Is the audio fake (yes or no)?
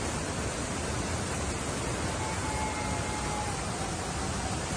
no